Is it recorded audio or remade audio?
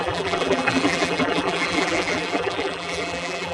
remade